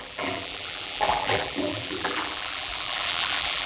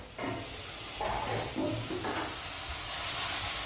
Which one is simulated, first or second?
first